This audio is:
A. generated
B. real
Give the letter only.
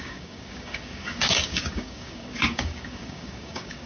A